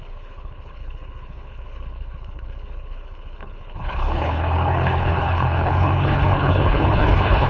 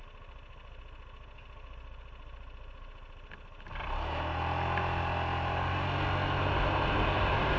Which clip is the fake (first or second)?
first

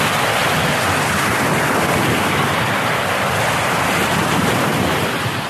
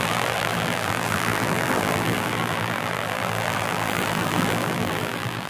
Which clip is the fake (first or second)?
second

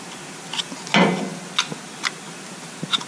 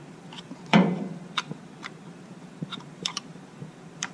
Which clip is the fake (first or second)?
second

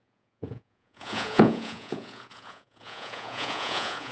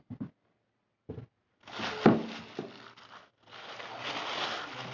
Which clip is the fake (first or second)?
first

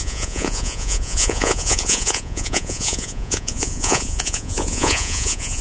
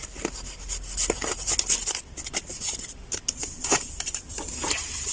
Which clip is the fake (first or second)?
first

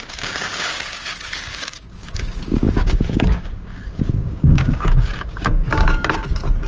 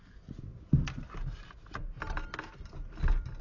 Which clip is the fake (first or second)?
first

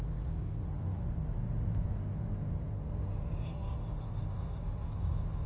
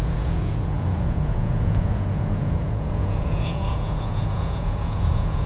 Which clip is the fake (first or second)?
second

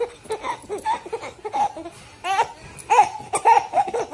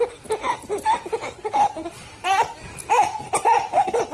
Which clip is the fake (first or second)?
second